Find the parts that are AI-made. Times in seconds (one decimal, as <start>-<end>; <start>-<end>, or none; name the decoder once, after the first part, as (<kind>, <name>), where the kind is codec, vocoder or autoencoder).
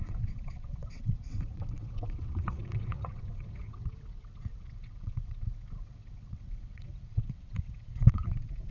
0.0-8.7 (vocoder, WaveNeXt)